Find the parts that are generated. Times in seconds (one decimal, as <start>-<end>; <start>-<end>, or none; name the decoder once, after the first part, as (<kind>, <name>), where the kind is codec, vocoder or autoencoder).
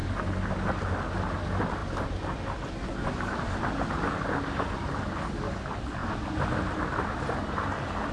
none